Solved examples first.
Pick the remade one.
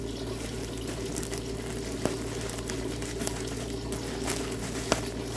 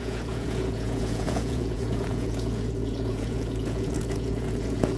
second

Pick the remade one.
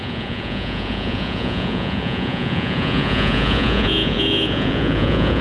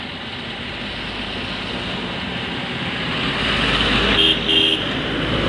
first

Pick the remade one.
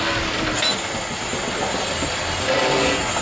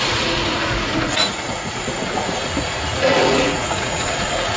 second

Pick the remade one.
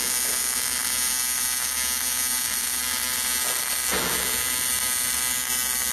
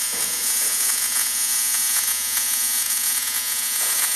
second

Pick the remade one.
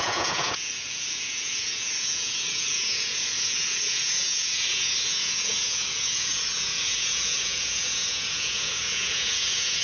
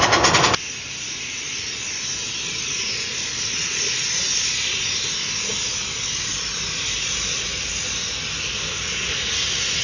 first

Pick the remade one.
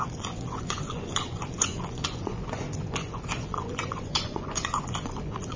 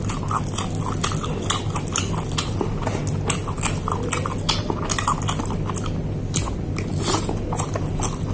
first